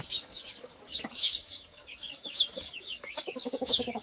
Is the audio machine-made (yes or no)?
yes